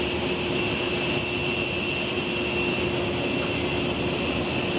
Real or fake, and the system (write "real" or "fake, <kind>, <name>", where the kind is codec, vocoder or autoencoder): real